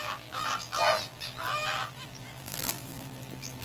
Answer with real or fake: fake